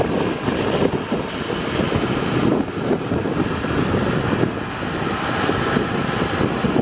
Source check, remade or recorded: recorded